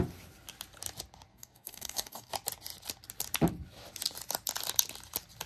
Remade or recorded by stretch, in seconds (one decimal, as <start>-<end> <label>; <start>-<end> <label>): 0.0-1.3 recorded; 1.3-2.3 remade; 2.3-5.5 recorded